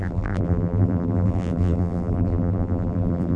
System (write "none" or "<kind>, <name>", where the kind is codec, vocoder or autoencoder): vocoder, BigVGAN v2